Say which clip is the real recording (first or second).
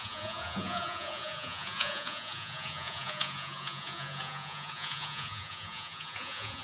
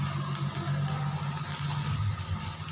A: second